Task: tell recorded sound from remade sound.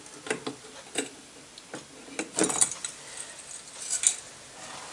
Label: recorded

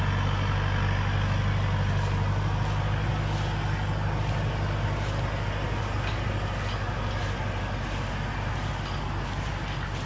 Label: recorded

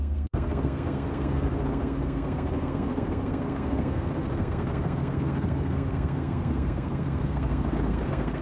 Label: remade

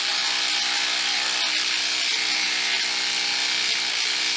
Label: recorded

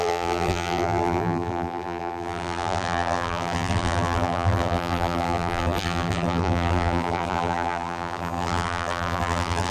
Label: remade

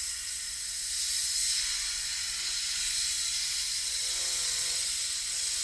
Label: remade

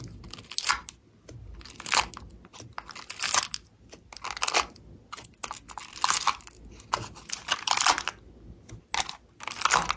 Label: recorded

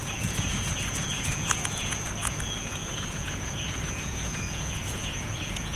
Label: remade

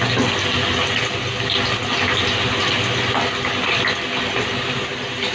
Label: recorded